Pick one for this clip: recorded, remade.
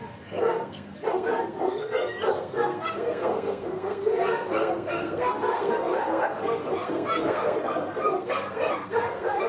remade